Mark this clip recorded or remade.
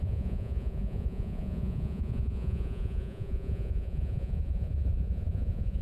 remade